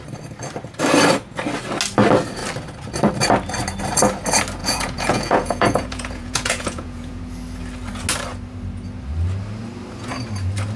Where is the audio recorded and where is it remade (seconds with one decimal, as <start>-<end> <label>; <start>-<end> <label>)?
0.0-4.6 recorded; 4.6-7.2 remade; 7.2-10.8 recorded